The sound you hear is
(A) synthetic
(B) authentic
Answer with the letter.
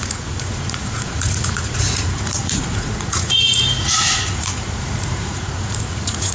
A